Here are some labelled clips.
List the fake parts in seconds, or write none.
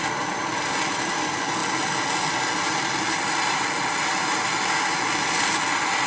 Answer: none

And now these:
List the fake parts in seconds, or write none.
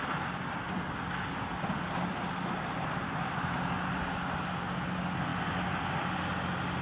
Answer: none